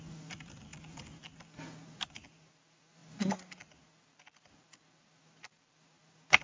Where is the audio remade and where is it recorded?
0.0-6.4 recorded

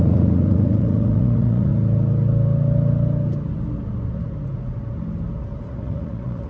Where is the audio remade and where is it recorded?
0.0-1.7 remade; 1.7-5.6 recorded; 5.6-6.5 remade

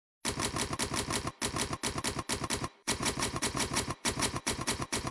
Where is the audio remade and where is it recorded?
0.0-2.6 recorded; 2.6-5.1 remade

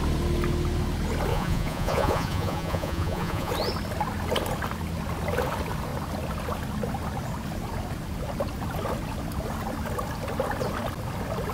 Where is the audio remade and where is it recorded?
0.0-1.3 recorded; 1.3-3.5 remade; 3.5-11.5 recorded

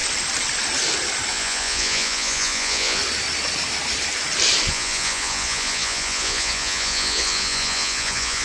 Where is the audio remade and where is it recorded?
0.0-1.3 recorded; 1.3-3.0 remade; 3.0-4.7 recorded; 4.7-8.4 remade

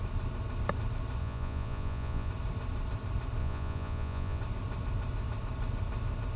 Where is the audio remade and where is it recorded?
0.0-1.2 recorded; 1.2-2.3 remade; 2.3-3.4 recorded; 3.4-4.4 remade; 4.4-6.4 recorded